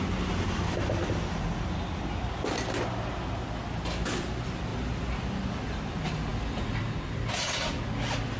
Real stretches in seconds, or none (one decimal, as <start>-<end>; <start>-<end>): 0.0-8.4